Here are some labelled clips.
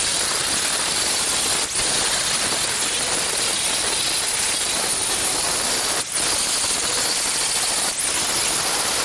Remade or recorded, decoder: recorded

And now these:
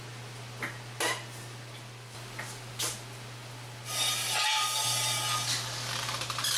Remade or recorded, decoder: recorded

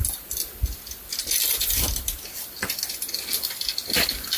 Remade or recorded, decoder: recorded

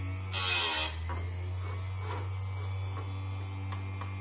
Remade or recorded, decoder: recorded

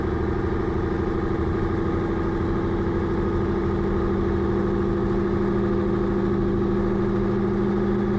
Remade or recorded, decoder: recorded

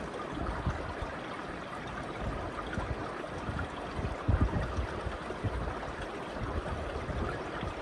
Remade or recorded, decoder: recorded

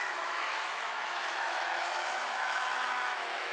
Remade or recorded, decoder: remade, autoencoder, DAC-VAE